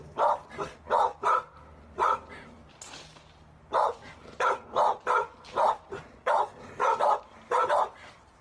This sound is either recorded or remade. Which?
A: recorded